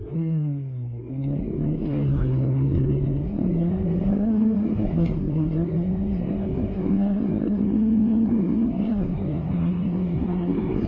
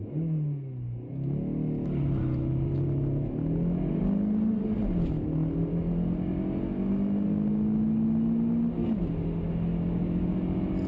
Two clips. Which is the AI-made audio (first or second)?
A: first